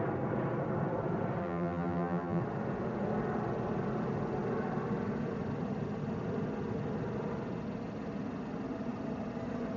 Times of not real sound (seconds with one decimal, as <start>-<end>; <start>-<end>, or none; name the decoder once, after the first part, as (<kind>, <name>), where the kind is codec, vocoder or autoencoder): 1.4-2.4 (vocoder, BigVGAN v2)

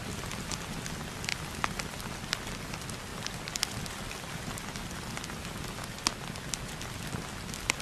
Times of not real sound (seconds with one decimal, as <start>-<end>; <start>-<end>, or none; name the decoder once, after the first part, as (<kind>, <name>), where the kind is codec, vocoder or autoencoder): 3.1-4.3 (vocoder, BigVGAN v2)

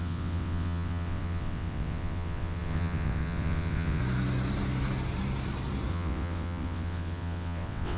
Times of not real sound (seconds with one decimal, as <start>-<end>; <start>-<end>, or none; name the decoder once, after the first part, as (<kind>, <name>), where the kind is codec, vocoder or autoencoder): 0.0-4.0 (vocoder, WaveNeXt); 5.9-8.0

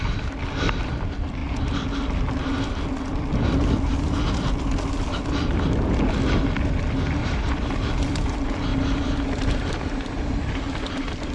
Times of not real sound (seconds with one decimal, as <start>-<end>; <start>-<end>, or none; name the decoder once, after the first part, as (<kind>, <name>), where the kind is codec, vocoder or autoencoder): 7.2-7.9 (vocoder, BigVGAN v2)

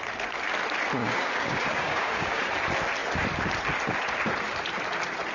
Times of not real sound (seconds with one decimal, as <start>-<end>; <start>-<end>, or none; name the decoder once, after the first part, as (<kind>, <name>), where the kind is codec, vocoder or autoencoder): 1.0-2.4 (codec, DAC)

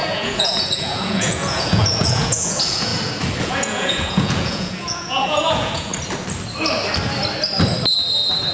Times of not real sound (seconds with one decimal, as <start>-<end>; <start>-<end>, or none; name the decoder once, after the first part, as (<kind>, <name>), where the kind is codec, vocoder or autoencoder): 0.0-2.9 (vocoder, Vocos); 3.4-5.9